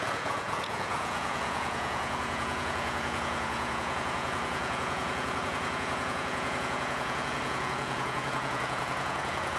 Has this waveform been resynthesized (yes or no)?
yes